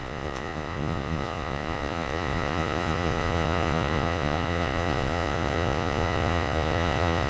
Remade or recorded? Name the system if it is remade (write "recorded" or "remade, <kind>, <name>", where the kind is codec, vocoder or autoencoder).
remade, vocoder, Vocos